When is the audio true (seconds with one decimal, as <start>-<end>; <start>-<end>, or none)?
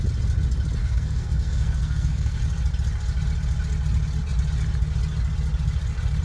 0.0-0.8; 2.4-6.2